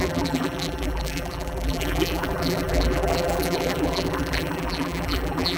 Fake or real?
fake